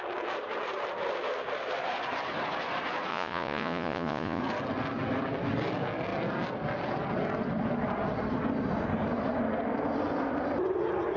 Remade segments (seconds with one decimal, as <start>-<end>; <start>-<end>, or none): 3.1-4.4